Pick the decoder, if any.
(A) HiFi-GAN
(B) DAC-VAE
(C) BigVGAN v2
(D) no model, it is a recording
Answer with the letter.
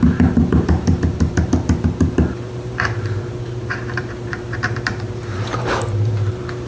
C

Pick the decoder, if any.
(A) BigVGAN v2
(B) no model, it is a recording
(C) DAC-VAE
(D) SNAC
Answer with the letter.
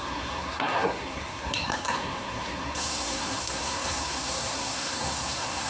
D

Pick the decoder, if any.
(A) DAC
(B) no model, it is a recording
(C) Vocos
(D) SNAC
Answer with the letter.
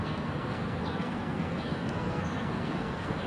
D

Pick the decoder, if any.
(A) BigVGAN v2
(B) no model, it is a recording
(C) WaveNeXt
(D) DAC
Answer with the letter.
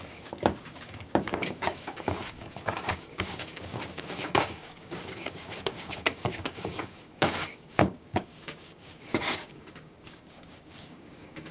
D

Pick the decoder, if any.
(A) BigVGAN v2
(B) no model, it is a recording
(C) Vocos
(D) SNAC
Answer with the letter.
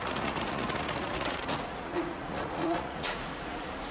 C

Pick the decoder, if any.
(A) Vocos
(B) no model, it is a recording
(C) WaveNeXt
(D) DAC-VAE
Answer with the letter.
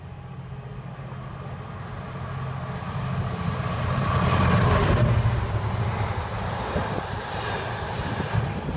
B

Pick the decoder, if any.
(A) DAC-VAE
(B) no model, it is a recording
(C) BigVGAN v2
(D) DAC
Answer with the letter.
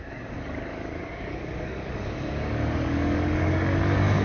D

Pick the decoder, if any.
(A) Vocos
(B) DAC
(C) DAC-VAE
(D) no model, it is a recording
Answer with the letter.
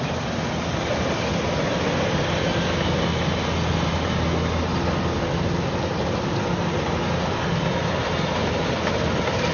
D